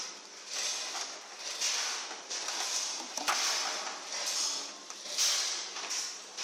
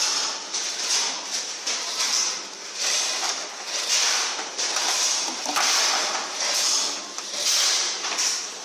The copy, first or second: second